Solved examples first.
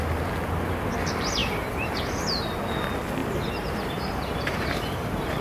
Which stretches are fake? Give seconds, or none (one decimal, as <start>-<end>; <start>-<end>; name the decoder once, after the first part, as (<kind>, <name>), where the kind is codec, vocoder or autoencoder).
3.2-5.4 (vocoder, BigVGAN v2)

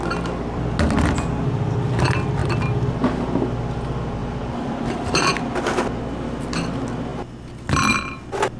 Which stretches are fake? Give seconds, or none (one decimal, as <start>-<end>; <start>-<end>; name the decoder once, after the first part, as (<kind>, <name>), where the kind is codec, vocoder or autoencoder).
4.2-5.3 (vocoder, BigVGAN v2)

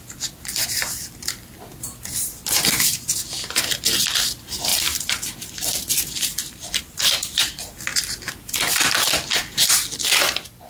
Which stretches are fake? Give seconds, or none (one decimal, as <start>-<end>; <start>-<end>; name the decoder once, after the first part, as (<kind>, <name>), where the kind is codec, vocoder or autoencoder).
0.0-7.9 (vocoder, BigVGAN v2); 8.7-10.7